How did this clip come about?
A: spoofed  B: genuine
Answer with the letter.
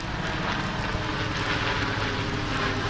B